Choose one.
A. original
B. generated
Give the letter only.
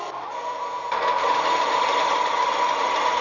B